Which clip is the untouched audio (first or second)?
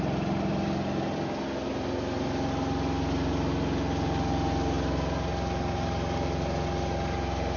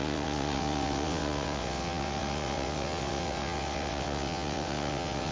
first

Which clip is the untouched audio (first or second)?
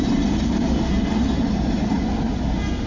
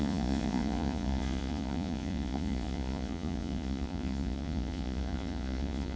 first